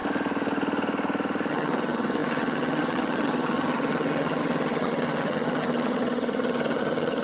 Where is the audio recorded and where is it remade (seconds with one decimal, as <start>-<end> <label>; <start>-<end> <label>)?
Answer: 0.0-1.5 recorded; 1.5-7.2 remade